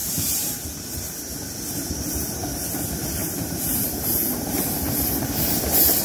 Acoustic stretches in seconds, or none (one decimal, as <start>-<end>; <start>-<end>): 1.0-3.2; 5.3-6.0